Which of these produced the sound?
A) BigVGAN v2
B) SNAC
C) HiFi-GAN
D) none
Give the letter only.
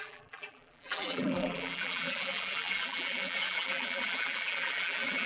A